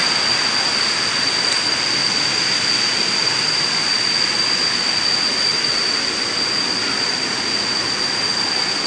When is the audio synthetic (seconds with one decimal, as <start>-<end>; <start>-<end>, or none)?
none